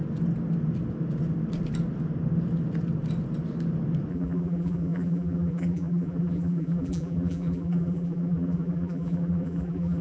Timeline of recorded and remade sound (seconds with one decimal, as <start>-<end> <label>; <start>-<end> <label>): 0.0-4.1 recorded; 4.1-10.0 remade